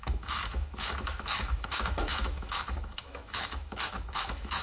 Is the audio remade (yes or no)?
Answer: yes